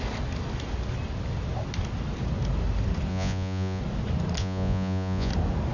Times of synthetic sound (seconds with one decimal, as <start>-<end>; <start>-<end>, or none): 3.1-3.8; 4.4-5.3